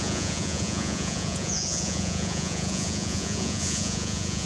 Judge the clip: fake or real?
fake